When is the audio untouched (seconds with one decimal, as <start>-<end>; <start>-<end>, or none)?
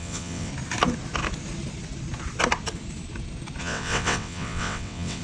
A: 0.5-3.6